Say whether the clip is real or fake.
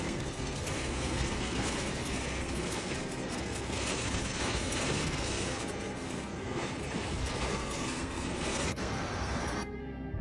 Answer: fake